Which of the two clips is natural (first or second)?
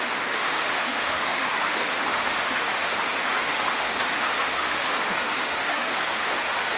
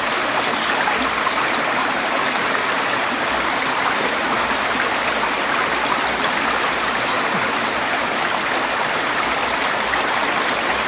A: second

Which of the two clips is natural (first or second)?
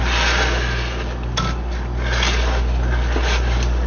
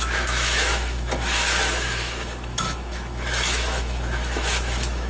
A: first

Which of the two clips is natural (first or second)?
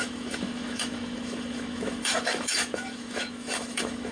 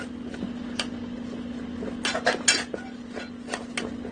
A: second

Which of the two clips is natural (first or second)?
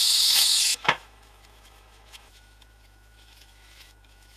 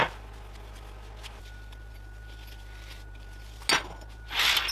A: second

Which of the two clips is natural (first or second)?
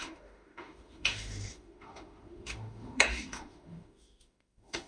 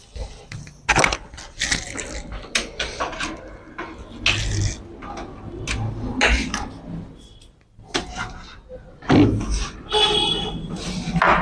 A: second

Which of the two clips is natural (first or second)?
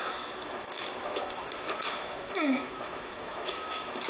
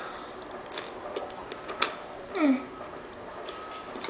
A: second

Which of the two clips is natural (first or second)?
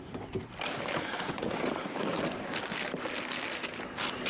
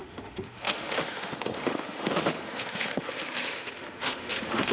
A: first